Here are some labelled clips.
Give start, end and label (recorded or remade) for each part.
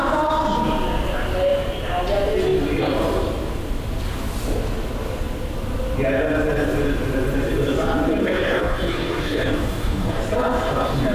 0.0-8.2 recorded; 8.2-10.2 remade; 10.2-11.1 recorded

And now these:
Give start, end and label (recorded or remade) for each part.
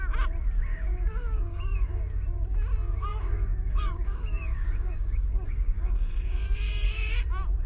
0.0-0.7 recorded; 0.7-2.0 remade; 2.0-3.1 recorded; 3.1-7.2 remade; 7.2-7.7 recorded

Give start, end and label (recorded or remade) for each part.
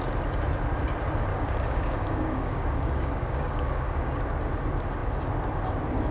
0.0-1.3 recorded; 1.3-4.2 remade; 4.2-6.1 recorded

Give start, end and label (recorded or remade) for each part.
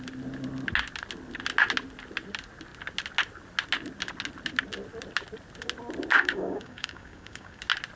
0.0-6.1 recorded; 6.1-7.6 remade; 7.6-8.0 recorded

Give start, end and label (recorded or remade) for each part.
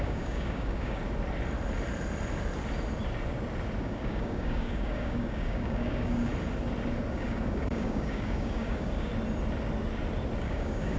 0.0-1.0 remade; 1.0-3.8 recorded; 3.8-6.3 remade; 6.3-7.1 recorded; 7.1-9.1 remade; 9.1-10.4 recorded; 10.4-11.0 remade